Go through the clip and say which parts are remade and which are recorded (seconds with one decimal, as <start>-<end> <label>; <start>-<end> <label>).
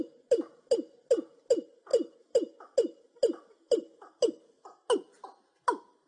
0.0-6.1 recorded